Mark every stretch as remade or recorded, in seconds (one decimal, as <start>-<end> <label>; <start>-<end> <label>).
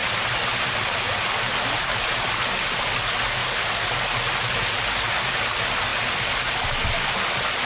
0.0-7.7 recorded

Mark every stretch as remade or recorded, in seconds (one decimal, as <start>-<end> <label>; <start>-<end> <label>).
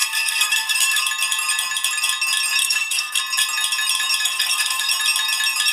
0.0-1.0 remade; 1.0-2.6 recorded; 2.6-3.2 remade; 3.2-4.2 recorded; 4.2-4.9 remade; 4.9-5.7 recorded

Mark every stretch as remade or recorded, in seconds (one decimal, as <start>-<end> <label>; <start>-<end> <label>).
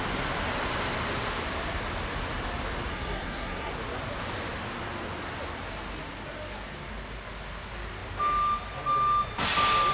0.0-2.9 recorded; 2.9-3.7 remade; 3.7-9.9 recorded